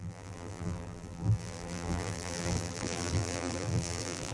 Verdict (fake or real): fake